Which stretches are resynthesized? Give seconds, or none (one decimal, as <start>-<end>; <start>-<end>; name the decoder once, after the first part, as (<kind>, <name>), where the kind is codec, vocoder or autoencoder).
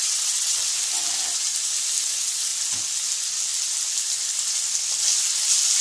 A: 0.0-0.7 (vocoder, WaveNeXt); 2.1-2.5